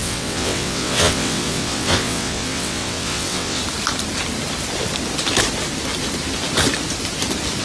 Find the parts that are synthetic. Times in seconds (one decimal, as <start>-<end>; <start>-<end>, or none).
0.0-3.6